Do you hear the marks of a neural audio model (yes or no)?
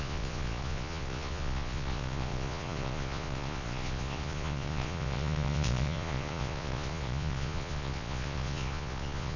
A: yes